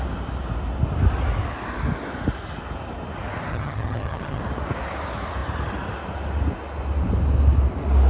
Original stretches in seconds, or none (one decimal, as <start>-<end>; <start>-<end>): 0.0-3.5; 4.4-8.1